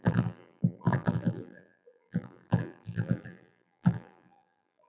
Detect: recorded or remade remade